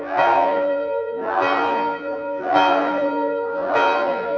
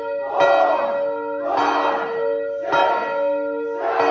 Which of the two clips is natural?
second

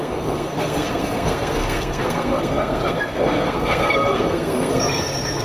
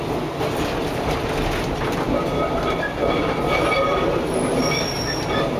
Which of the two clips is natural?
second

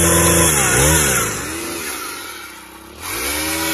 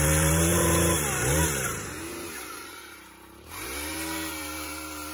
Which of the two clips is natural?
first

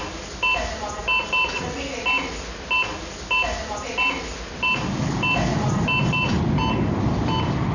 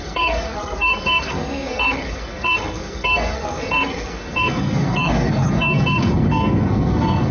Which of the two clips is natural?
first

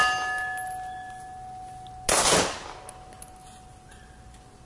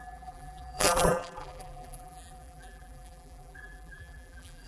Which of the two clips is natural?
first